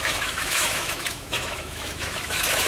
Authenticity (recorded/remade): remade